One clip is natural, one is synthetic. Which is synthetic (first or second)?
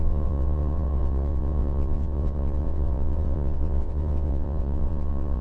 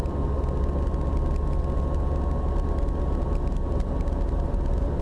first